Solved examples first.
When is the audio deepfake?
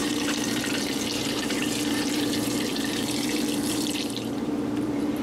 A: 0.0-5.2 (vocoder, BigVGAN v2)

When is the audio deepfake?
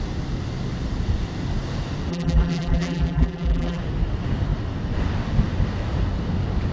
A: 2.1-3.8 (vocoder, BigVGAN v2)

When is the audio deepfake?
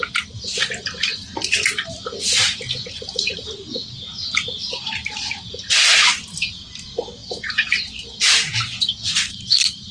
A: 3.8-5.2 (vocoder, BigVGAN v2); 7.2-9.9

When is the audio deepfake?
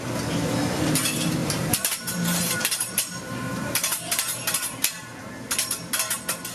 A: 1.4-5.3 (vocoder, BigVGAN v2)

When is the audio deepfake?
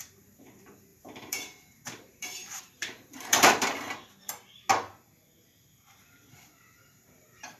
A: 0.0-4.5 (vocoder, BigVGAN v2); 6.2-7.6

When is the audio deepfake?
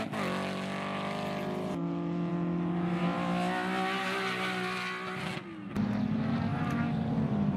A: none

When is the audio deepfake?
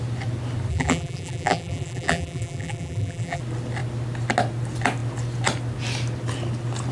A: 0.7-3.4 (vocoder, BigVGAN v2)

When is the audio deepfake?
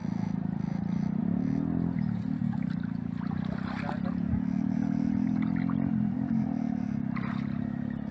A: 0.0-1.2 (vocoder, BigVGAN v2); 2.4-7.3